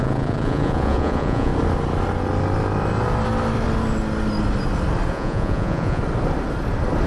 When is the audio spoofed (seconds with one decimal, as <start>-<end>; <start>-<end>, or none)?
0.0-1.5; 5.1-6.0